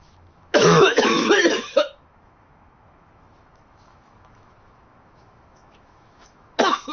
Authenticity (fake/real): fake